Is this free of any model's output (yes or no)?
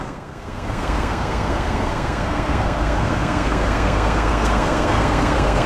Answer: no